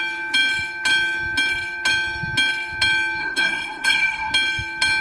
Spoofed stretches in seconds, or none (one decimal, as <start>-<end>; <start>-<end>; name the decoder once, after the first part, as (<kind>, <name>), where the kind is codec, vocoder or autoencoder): 3.2-4.3 (codec, SNAC)

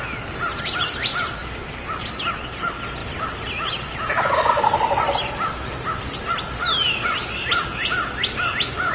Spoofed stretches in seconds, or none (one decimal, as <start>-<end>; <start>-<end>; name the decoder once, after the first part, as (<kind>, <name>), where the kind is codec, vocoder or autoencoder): none